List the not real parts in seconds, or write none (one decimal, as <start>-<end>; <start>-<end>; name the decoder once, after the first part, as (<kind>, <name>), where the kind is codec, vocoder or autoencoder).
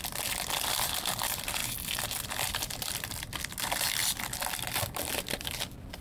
none